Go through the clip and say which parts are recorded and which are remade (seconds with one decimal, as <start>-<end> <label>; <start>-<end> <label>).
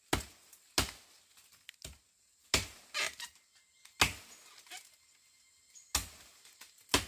0.0-7.1 recorded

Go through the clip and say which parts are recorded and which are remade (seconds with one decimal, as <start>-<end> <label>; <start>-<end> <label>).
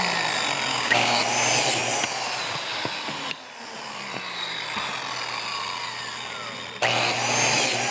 0.0-0.7 recorded; 0.7-1.2 remade; 1.2-7.9 recorded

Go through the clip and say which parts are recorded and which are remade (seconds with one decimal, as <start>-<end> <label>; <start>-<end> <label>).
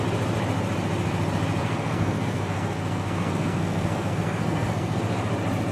0.0-1.6 recorded; 1.6-5.0 remade; 5.0-5.7 recorded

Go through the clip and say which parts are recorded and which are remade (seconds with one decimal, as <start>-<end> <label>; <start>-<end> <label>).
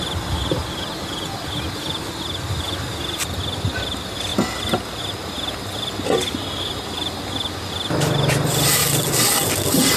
0.0-10.0 recorded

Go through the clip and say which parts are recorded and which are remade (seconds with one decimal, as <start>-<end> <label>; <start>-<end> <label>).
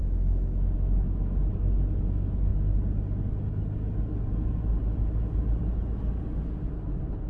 0.0-1.5 remade; 1.5-7.3 recorded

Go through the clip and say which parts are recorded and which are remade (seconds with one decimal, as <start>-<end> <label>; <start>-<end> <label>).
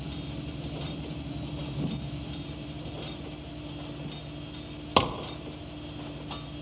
0.0-6.6 recorded